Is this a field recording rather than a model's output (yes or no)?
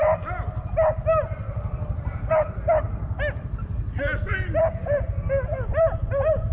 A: yes